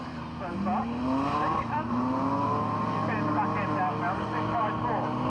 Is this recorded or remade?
recorded